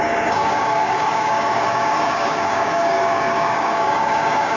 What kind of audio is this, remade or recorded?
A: remade